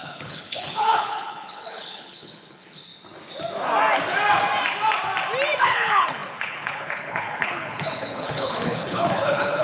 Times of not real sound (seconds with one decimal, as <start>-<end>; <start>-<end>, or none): 0.0-2.9; 5.6-9.6